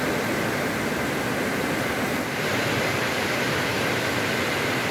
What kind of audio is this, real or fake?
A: real